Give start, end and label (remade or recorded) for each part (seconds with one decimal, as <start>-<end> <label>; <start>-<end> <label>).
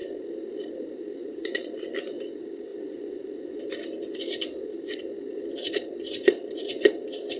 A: 0.0-1.2 recorded; 1.2-2.2 remade; 2.2-2.7 recorded; 2.7-3.6 remade; 3.6-7.4 recorded